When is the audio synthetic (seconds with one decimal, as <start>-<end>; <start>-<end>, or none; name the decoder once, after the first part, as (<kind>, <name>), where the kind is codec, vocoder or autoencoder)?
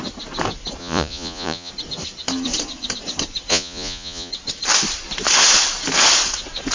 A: 0.8-1.7 (vocoder, Vocos); 3.5-4.3